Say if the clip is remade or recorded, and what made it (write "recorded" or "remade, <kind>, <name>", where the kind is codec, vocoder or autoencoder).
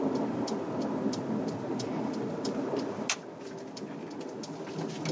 recorded